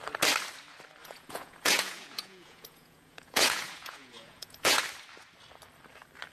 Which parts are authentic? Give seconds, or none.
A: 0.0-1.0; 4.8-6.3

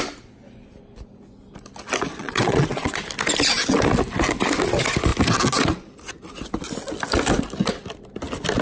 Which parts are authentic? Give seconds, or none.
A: 0.0-2.1; 3.0-8.6